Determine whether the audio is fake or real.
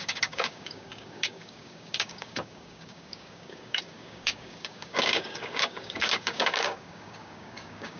fake